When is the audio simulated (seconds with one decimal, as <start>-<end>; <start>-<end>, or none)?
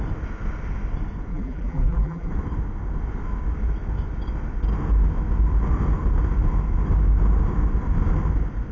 1.3-2.3